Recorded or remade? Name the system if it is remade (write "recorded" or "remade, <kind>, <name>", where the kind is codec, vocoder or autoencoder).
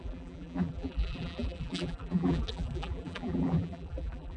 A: remade, vocoder, BigVGAN v2